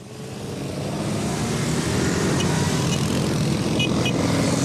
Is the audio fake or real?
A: real